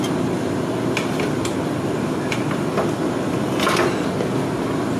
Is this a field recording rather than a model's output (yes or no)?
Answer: yes